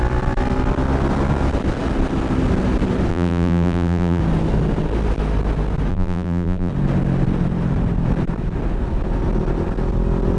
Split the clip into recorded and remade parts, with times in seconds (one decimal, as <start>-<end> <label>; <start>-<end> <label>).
0.0-3.1 recorded; 3.1-4.2 remade; 4.2-5.9 recorded; 5.9-6.7 remade; 6.7-10.4 recorded